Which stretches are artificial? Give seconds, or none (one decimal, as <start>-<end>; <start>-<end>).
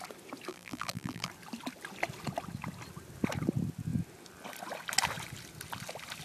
0.5-1.3